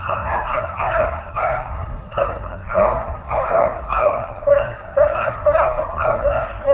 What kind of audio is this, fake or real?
fake